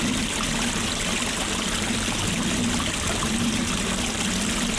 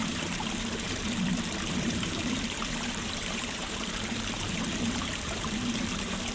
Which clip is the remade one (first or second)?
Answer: second